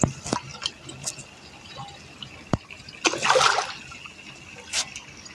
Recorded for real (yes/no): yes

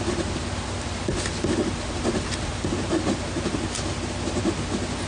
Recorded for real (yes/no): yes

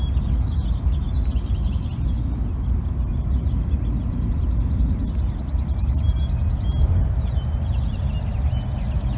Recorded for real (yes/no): yes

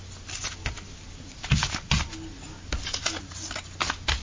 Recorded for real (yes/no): yes